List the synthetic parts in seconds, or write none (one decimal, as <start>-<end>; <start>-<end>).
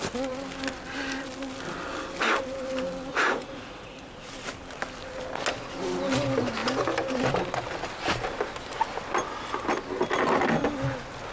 3.1-4.3